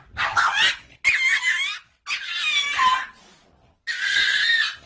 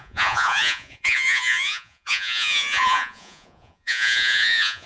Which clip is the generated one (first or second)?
second